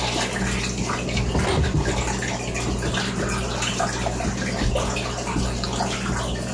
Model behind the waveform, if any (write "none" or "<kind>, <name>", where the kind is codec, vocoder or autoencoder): none